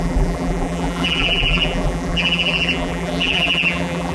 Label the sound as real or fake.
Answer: fake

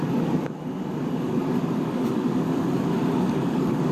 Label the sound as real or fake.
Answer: fake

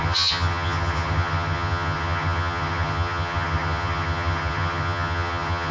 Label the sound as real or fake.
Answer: fake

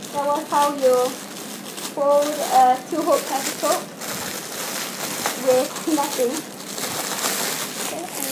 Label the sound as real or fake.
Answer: real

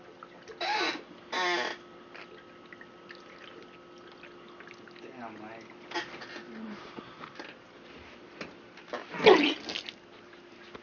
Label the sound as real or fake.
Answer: real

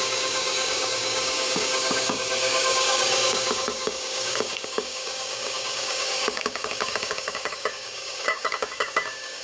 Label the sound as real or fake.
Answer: fake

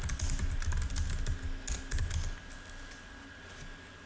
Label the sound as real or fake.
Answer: real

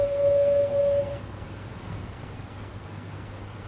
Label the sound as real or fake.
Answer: fake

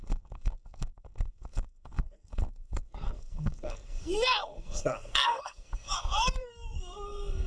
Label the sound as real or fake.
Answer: fake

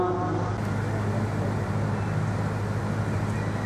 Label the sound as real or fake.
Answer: real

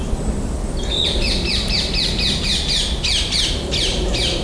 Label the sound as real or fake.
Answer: real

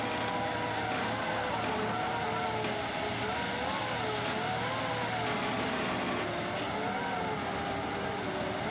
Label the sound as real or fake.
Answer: real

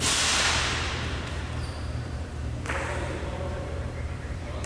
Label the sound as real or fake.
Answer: fake